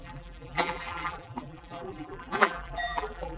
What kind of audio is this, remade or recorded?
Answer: remade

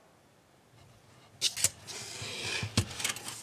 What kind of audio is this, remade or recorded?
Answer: recorded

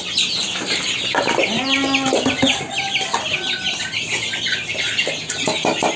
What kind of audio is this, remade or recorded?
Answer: recorded